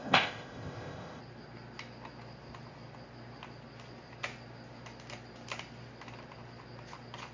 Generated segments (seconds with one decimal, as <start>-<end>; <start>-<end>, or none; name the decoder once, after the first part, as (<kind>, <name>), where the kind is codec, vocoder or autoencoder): 0.0-1.2 (codec, ZipCodec)